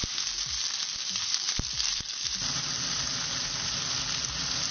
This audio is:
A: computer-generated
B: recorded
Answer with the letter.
B